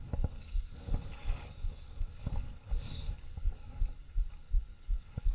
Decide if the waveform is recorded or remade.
remade